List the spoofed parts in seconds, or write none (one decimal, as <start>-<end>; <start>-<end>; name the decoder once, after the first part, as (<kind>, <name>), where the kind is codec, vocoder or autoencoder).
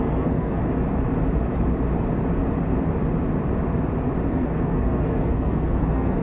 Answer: 0.0-0.6 (codec, SNAC); 4.3-6.2